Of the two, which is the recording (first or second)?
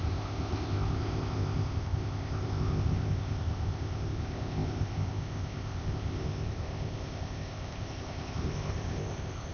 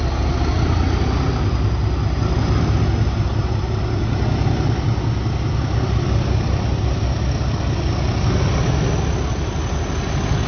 second